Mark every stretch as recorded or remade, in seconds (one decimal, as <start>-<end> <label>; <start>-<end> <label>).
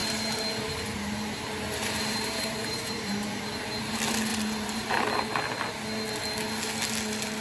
0.0-3.4 remade; 3.4-4.3 recorded; 4.3-4.9 remade; 4.9-7.4 recorded